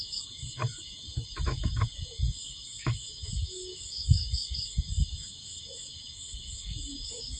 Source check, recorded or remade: remade